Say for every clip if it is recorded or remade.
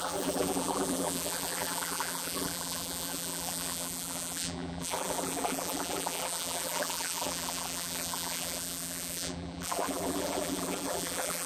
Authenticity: remade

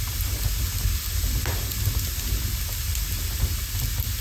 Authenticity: recorded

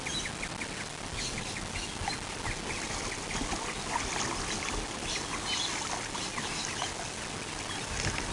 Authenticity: recorded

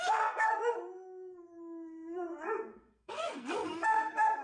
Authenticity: remade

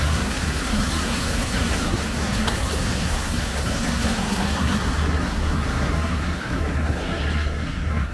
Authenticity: remade